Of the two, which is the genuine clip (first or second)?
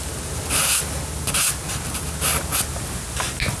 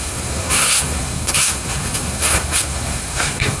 first